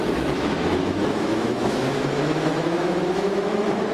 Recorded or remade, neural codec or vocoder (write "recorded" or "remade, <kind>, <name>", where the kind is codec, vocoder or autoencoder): remade, autoencoder, DAC-VAE